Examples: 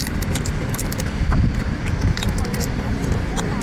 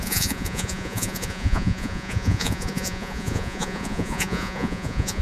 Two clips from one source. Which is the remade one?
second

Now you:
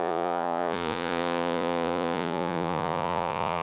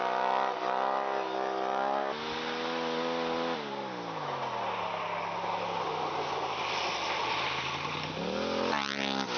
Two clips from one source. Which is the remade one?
first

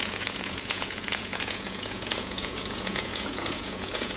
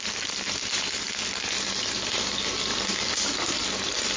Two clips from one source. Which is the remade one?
first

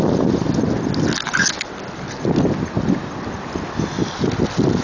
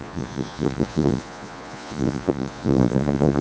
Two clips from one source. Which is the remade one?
second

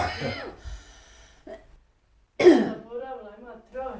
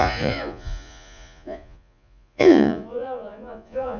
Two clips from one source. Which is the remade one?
second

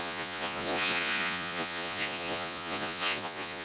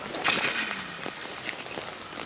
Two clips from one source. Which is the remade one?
first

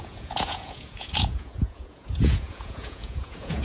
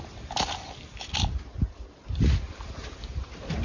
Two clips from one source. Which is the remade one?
first